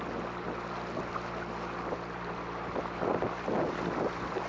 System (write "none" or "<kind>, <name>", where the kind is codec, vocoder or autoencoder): none